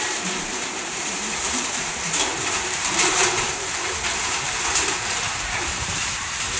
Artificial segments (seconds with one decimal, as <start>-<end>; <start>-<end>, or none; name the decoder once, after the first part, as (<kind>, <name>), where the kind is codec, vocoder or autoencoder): 0.0-6.6 (vocoder, BigVGAN v2)

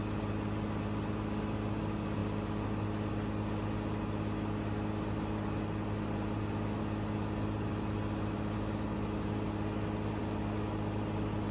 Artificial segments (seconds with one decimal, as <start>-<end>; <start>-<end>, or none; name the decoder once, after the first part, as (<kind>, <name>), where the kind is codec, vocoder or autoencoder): none

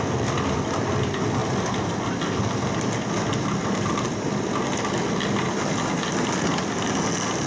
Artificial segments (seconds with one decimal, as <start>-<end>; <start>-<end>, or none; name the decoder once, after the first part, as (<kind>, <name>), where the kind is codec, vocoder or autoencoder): none

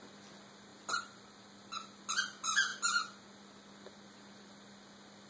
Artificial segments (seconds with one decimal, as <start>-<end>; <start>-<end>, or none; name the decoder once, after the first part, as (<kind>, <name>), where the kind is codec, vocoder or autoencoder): 0.7-2.0 (vocoder, BigVGAN v2)

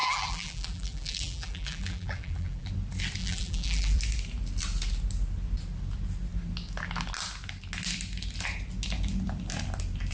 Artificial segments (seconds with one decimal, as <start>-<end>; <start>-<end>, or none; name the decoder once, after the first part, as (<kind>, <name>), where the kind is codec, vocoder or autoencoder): 0.0-2.7 (vocoder, BigVGAN v2); 3.2-4.0